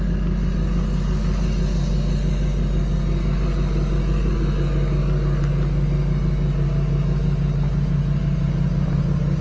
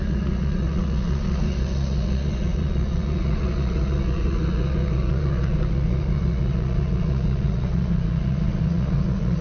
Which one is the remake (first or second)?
second